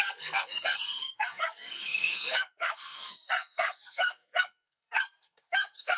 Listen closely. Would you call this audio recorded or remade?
remade